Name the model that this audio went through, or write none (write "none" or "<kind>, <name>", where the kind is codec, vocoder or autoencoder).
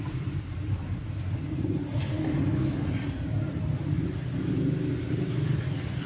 none